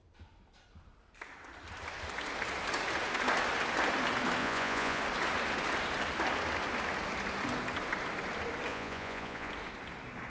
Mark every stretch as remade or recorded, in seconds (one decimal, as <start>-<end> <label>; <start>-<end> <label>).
0.0-4.4 recorded; 4.4-5.0 remade; 5.0-8.7 recorded; 8.7-9.5 remade; 9.5-10.3 recorded